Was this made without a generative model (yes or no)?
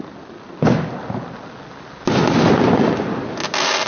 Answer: yes